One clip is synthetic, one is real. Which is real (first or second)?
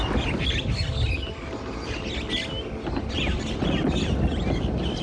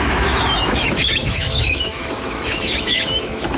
first